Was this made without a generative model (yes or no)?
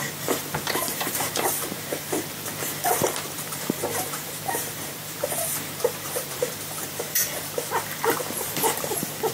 no